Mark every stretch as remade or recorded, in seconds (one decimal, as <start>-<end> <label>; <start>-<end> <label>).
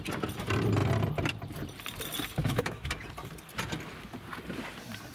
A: 0.0-2.4 recorded; 2.4-2.9 remade; 2.9-5.1 recorded